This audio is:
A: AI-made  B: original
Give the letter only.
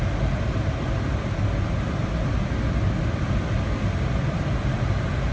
B